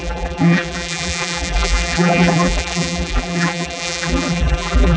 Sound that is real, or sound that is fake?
fake